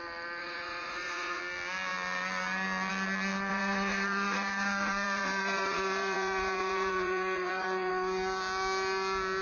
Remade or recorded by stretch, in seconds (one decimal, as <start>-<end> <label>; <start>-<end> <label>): 0.0-0.4 recorded; 0.4-1.4 remade; 1.4-3.5 recorded; 3.5-7.9 remade; 7.9-9.4 recorded